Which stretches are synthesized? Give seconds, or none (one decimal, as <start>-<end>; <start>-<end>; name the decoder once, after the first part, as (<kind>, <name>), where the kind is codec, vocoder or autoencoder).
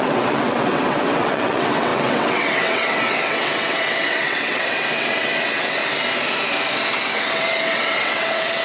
0.0-5.8 (vocoder, WaveNeXt); 7.1-8.6